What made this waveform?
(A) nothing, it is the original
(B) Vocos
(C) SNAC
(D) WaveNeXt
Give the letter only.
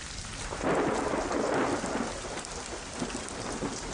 A